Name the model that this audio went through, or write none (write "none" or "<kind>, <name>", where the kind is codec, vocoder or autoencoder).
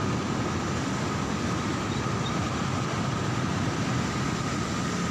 none